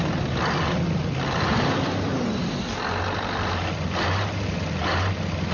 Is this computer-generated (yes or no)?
no